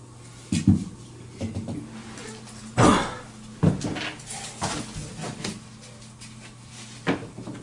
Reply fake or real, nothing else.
real